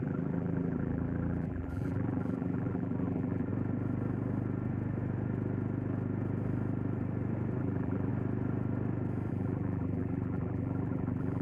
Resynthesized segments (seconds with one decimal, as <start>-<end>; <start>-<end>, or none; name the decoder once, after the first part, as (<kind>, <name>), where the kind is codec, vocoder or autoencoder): 0.0-3.5 (vocoder, BigVGAN v2); 7.6-8.1; 9.3-11.4